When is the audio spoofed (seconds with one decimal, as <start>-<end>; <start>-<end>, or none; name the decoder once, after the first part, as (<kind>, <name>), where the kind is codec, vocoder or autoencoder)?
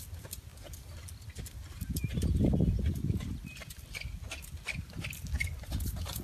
none